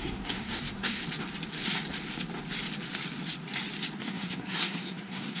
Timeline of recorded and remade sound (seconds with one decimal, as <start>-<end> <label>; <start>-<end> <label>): 0.0-1.0 remade; 1.0-4.0 recorded; 4.0-5.4 remade

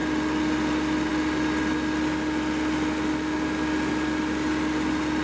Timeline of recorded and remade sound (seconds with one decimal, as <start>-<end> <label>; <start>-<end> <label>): 0.0-5.2 recorded

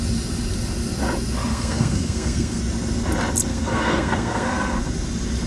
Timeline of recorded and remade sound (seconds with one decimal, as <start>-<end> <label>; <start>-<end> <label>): 0.0-1.5 recorded; 1.5-2.6 remade; 2.6-3.5 recorded; 3.5-4.8 remade; 4.8-5.5 recorded

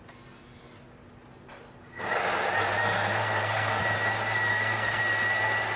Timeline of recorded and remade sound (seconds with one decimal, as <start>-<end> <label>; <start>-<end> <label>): 0.0-2.8 recorded; 2.8-3.8 remade; 3.8-4.5 recorded; 4.5-5.0 remade; 5.0-5.8 recorded